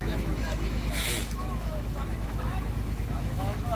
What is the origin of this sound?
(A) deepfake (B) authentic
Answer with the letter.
A